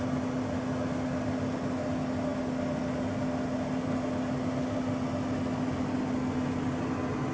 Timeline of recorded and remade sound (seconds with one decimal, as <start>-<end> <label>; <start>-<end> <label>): 0.0-7.3 recorded